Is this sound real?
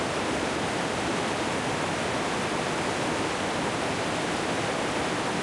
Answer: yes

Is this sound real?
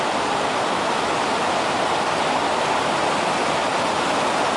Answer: yes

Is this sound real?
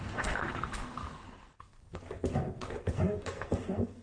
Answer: no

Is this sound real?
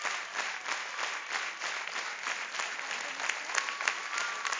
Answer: yes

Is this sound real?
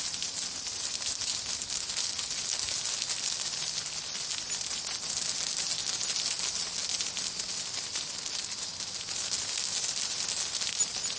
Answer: yes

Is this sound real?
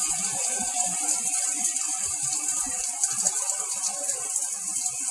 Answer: yes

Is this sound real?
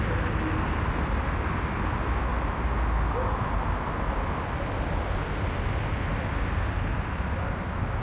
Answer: yes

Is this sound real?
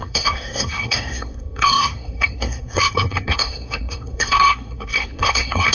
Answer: no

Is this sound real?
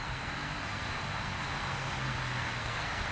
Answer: no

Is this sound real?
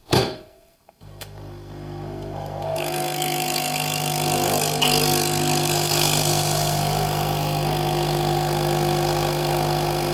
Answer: no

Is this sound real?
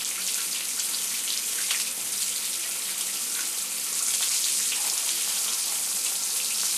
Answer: yes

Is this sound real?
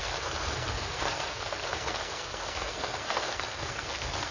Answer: no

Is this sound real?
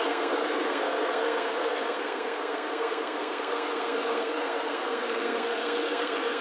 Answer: no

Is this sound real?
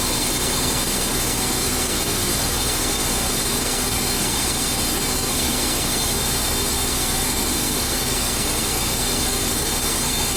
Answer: no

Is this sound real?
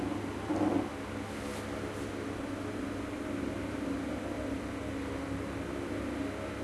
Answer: yes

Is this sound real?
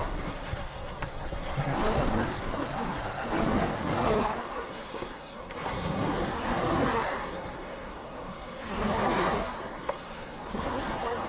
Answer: no